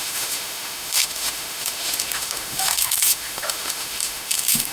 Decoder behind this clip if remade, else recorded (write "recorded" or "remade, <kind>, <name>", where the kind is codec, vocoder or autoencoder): remade, autoencoder, DAC-VAE